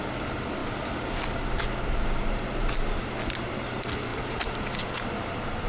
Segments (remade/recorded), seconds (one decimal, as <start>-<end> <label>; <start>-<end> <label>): 0.0-5.7 recorded